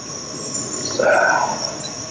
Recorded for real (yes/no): yes